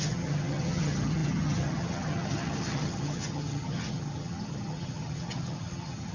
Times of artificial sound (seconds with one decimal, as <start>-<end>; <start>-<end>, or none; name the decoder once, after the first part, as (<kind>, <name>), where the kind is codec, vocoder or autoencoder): 0.0-6.1 (vocoder, HiFi-GAN)